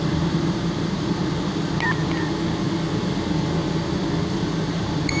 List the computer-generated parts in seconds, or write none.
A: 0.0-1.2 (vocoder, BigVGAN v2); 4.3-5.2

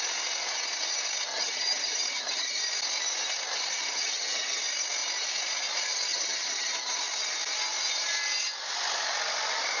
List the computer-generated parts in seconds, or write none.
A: 1.3-2.6 (vocoder, HiFi-GAN); 3.8-4.6; 6.1-7.0

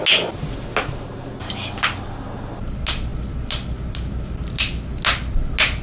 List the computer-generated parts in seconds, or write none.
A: none

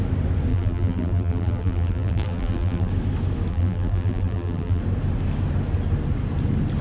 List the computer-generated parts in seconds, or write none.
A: 0.5-2.9 (vocoder, BigVGAN v2); 3.5-4.8

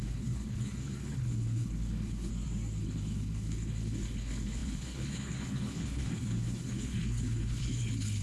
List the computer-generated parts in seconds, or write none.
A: 0.0-2.3 (codec, HILCodec); 2.8-8.2